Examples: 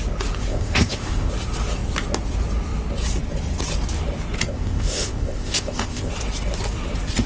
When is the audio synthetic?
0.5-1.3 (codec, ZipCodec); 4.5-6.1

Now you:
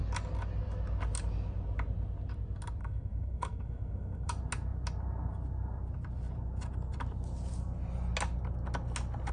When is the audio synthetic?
2.8-4.3 (codec, SNAC)

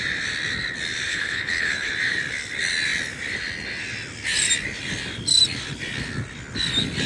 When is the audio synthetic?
1.1-1.9 (codec, HILCodec)

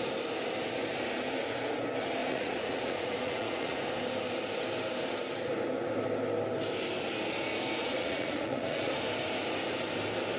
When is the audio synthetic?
2.2-3.8 (vocoder, Vocos); 7.8-8.9

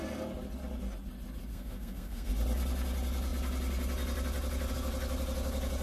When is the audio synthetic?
1.5-2.3 (codec, SNAC)

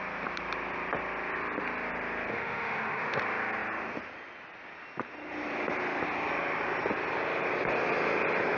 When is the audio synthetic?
2.3-3.2 (autoencoder, DAC-VAE)

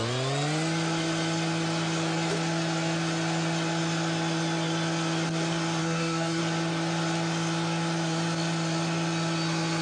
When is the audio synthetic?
5.8-6.4 (codec, SNAC)